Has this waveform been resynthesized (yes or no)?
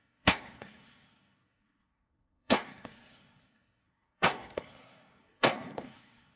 yes